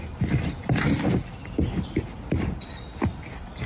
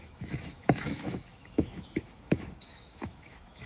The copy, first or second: second